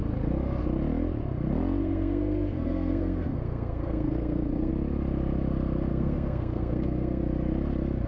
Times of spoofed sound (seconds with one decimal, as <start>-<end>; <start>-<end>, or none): 1.8-4.7; 5.9-7.2